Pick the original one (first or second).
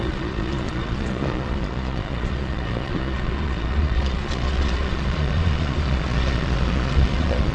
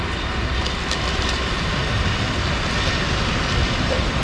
second